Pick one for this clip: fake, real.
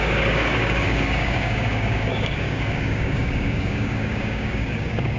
fake